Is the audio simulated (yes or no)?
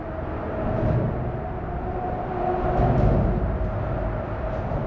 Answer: no